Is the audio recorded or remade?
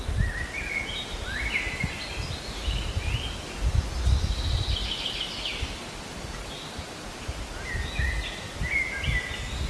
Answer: recorded